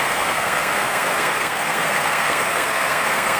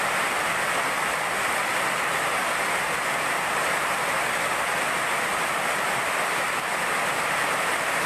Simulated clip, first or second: first